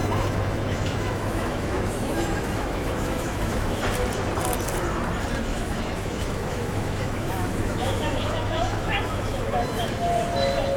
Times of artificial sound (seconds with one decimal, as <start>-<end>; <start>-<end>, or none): 0.0-3.8; 5.5-9.9